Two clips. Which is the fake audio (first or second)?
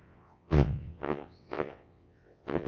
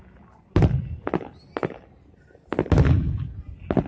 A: first